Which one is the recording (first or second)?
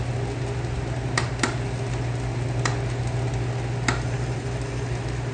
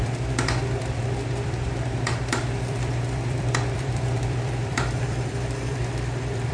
first